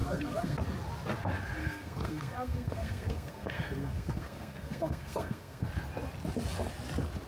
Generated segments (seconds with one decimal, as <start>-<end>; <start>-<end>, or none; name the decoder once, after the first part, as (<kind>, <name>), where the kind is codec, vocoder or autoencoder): 0.0-0.6 (codec, SNAC); 1.6-5.7